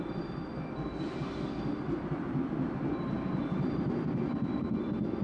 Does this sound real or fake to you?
real